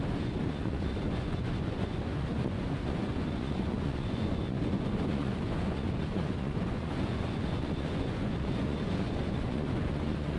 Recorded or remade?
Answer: remade